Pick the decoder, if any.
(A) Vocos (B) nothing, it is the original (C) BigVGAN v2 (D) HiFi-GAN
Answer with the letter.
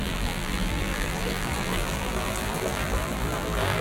C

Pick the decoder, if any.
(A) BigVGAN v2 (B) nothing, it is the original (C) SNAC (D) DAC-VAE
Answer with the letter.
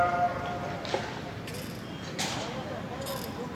B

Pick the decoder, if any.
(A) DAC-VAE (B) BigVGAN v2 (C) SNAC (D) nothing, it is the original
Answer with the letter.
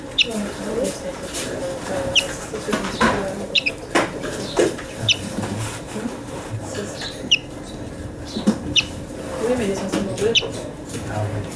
B